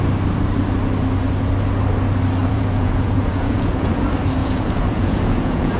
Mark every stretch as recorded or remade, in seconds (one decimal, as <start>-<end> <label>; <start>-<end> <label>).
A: 0.0-2.4 recorded; 2.4-4.0 remade; 4.0-4.4 recorded; 4.4-5.8 remade